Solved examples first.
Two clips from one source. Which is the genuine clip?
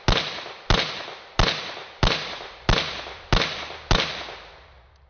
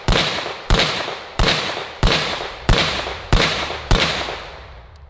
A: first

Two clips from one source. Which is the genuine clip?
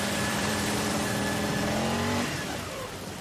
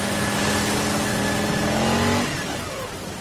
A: second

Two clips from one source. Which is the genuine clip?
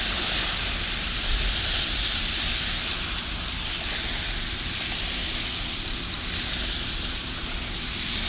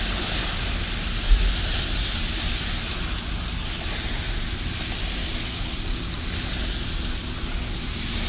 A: second